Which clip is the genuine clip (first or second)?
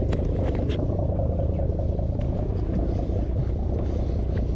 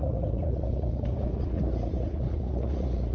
first